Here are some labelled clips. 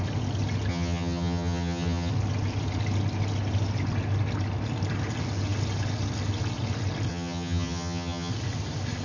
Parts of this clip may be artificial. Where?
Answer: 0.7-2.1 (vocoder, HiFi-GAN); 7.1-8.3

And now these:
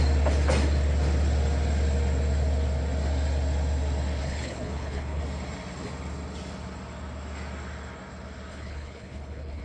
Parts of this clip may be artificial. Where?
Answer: 4.2-5.2 (codec, HILCodec); 8.5-9.6

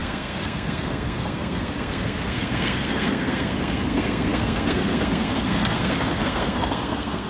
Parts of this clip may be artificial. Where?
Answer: 0.0-7.3 (codec, SNAC)

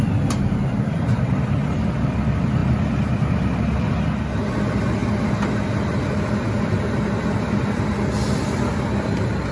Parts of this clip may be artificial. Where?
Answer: none